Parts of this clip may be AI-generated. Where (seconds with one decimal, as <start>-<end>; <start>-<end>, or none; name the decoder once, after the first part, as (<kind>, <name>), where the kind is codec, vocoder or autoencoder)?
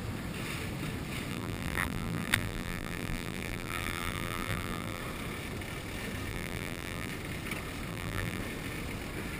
1.3-5.0 (vocoder, BigVGAN v2); 6.3-7.1; 7.9-8.4